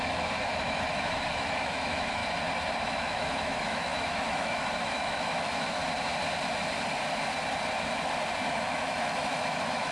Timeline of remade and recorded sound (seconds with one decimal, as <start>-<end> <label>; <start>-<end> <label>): 0.0-2.2 remade; 2.2-2.8 recorded; 2.8-5.8 remade; 5.8-8.5 recorded; 8.5-9.9 remade